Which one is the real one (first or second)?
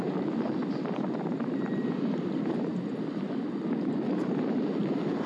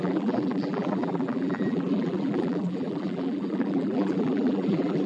first